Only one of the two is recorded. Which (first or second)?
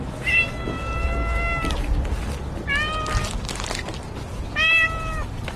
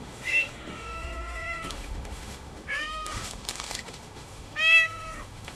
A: first